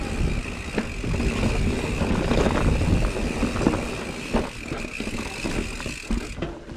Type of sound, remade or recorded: recorded